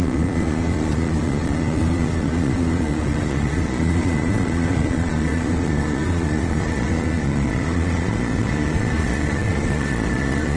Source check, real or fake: fake